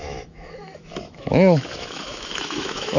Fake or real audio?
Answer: fake